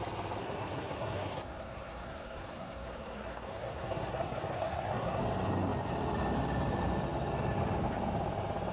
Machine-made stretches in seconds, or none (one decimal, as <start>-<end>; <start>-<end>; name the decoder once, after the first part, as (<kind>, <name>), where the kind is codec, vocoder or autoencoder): 0.4-5.2 (codec, SNAC)